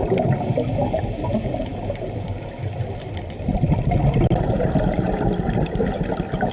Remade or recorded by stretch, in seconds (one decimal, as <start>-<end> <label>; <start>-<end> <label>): 0.0-6.5 recorded